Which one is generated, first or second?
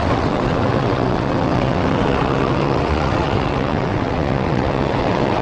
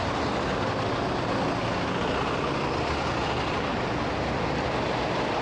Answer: first